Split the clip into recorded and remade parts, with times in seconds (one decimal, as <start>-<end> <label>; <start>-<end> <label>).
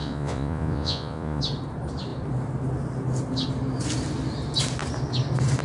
0.0-1.4 remade; 1.4-5.6 recorded